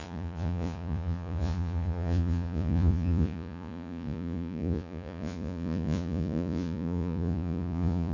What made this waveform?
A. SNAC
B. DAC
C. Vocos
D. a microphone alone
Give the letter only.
C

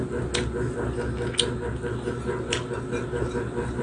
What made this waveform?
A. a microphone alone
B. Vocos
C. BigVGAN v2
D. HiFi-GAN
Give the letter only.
A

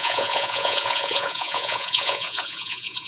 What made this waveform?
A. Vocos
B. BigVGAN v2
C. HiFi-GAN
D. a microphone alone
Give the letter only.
A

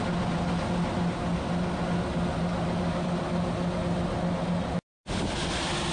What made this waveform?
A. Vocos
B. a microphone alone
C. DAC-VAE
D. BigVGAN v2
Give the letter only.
B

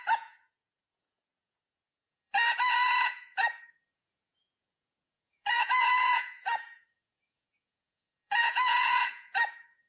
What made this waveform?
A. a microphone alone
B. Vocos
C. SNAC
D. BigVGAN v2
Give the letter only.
B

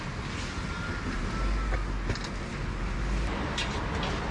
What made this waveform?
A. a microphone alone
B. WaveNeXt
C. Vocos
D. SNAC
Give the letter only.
A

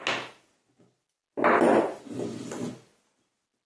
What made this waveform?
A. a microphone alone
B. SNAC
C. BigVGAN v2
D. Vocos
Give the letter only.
A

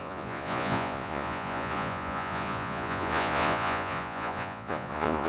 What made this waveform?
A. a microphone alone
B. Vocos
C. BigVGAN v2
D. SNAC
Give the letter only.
B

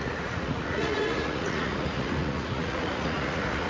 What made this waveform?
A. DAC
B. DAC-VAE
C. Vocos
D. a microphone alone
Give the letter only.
C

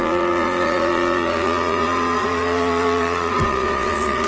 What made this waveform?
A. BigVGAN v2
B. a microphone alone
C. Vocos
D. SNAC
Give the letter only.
C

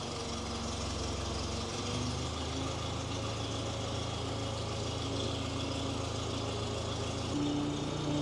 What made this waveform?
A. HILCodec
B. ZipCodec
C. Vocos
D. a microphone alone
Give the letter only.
D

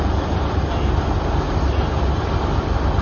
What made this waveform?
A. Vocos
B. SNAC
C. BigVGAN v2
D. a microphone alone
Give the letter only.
D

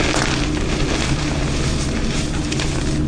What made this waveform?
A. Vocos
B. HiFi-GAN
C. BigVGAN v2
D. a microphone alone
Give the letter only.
D